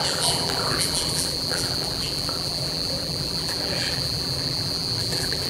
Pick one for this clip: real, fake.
fake